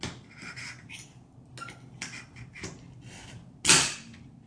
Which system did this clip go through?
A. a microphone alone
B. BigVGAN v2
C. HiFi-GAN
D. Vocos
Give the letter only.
A